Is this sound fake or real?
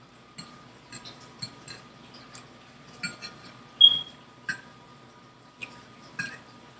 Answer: real